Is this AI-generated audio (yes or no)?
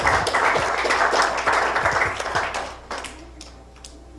no